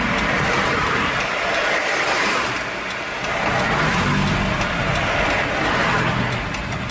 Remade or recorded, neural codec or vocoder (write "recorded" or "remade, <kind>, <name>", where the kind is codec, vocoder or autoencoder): recorded